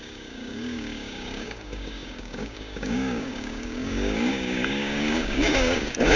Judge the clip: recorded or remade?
remade